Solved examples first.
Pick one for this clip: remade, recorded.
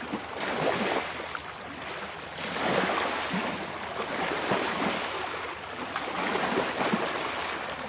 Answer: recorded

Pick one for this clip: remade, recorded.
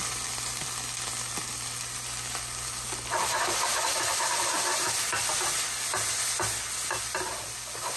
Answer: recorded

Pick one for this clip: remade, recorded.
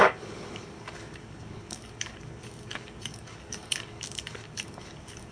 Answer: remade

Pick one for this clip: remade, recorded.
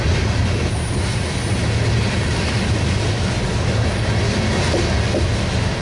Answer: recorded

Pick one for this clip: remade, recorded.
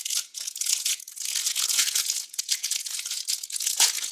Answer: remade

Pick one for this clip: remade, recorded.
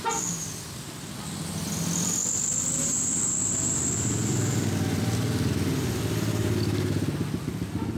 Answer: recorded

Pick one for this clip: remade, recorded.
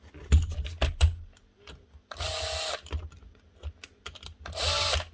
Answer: recorded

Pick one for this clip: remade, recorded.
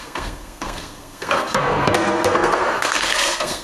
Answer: remade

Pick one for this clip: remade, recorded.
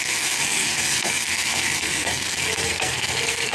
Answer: remade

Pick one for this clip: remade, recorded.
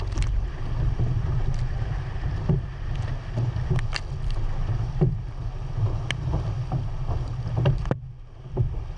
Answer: recorded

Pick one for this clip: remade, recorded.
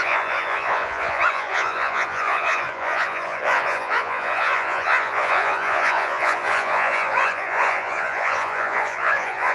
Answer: remade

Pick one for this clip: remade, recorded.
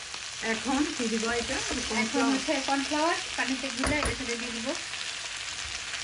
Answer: recorded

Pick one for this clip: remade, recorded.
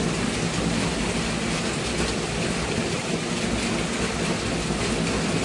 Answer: recorded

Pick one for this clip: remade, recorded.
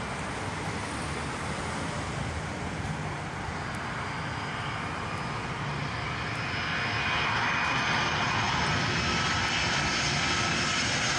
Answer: recorded